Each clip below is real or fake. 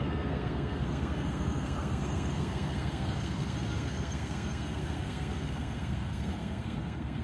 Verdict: fake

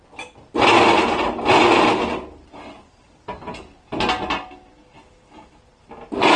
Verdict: real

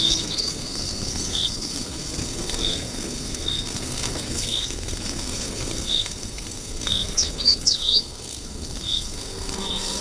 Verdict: fake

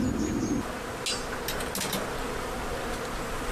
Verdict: real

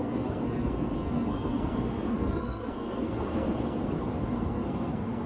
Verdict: fake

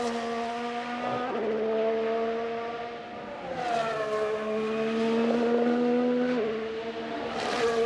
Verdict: real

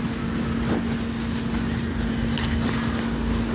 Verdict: real